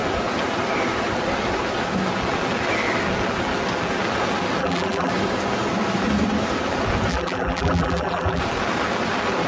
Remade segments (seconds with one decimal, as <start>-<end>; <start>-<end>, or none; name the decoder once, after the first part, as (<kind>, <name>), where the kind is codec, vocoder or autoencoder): 4.6-5.1 (vocoder, BigVGAN v2); 7.1-8.4